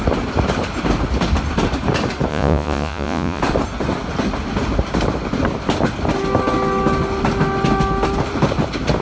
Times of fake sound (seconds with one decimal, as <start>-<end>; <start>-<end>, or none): 2.3-3.4